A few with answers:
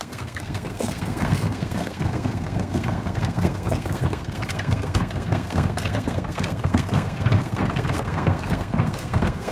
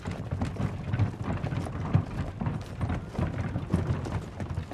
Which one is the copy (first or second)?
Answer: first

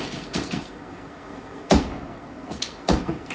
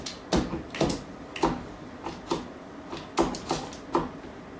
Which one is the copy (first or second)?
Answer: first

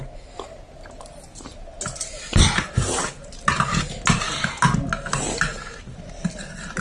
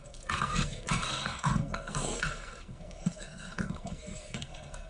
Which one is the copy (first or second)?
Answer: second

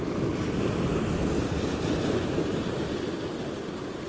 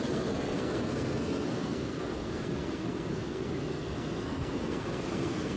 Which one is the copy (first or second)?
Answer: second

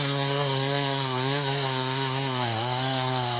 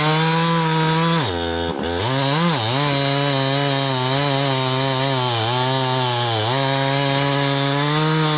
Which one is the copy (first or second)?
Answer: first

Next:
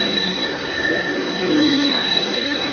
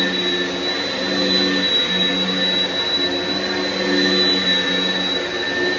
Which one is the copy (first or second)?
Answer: first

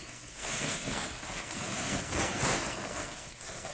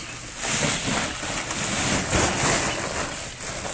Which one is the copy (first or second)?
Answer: first